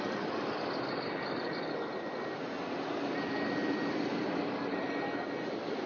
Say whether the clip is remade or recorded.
recorded